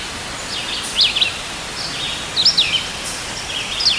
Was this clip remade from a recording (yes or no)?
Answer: no